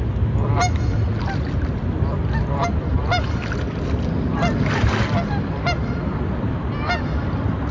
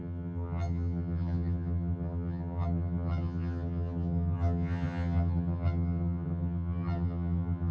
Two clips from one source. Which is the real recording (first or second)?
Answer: first